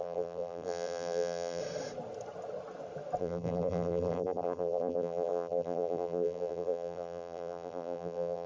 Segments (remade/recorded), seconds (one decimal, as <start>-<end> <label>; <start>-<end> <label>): 0.0-1.6 remade; 1.6-3.2 recorded; 3.2-8.5 remade